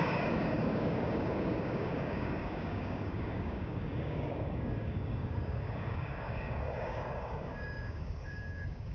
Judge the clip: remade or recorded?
remade